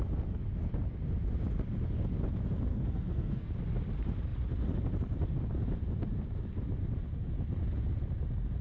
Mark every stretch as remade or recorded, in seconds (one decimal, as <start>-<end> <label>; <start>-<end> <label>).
0.0-2.7 recorded; 2.7-3.5 remade; 3.5-8.6 recorded